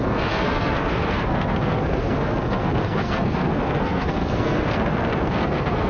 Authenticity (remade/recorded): remade